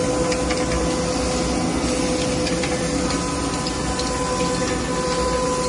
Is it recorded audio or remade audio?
recorded